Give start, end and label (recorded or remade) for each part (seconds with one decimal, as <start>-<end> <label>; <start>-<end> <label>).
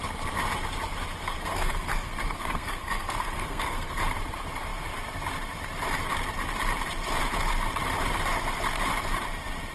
0.0-1.2 recorded; 1.2-4.0 remade; 4.0-9.7 recorded